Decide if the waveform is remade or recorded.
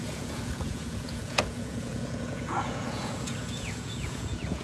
remade